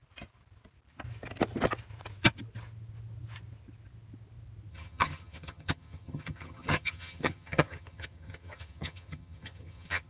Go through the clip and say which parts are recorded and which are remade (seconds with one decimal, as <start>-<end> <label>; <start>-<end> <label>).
0.0-4.7 recorded; 4.7-10.1 remade